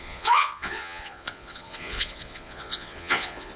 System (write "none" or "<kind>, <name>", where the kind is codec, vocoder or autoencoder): vocoder, Vocos